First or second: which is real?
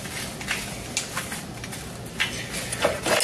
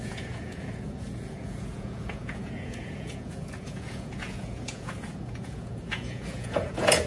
first